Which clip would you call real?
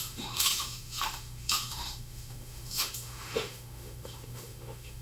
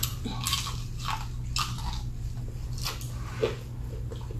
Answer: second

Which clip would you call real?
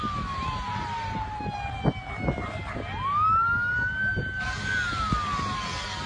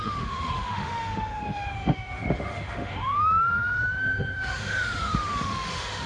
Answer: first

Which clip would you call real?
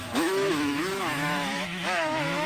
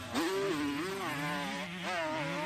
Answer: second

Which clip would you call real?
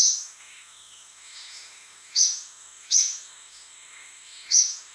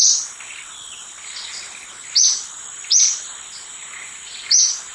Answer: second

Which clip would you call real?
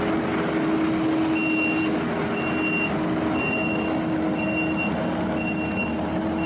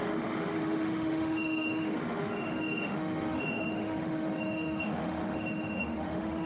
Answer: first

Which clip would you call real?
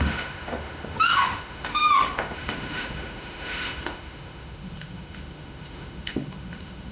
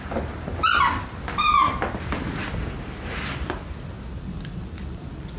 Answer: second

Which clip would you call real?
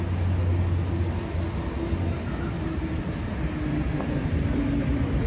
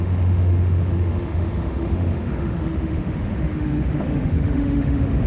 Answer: first